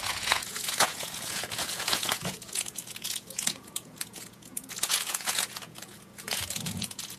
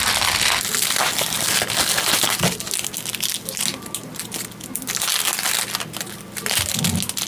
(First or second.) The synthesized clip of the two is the first